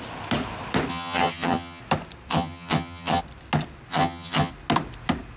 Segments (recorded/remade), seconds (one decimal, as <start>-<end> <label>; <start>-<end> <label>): 0.0-0.9 recorded; 0.9-1.8 remade; 1.8-2.3 recorded; 2.3-3.2 remade; 3.2-3.9 recorded; 3.9-4.5 remade; 4.5-5.4 recorded